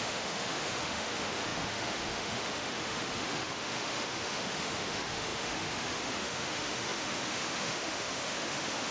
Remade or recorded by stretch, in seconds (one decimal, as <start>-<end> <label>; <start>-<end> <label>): 0.0-8.9 remade